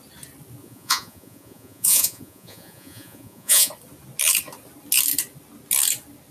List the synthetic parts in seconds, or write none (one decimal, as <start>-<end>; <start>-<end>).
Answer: 0.6-3.7